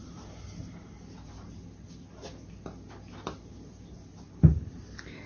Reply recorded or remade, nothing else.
recorded